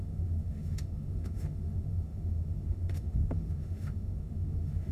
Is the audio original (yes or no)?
no